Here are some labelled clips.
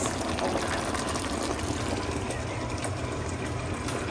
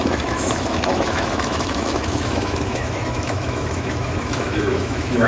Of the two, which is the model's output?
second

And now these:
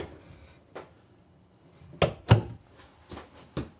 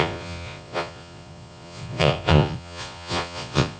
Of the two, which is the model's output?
second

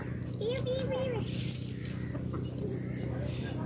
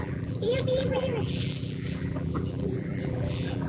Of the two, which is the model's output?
second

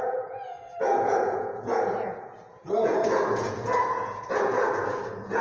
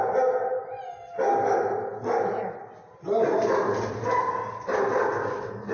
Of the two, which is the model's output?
first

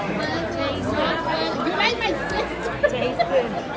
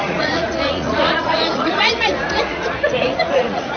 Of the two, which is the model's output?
second